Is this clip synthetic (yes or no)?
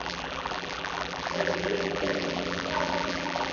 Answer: yes